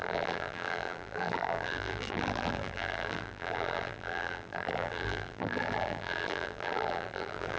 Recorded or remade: remade